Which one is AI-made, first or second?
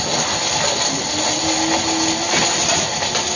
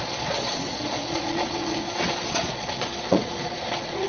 second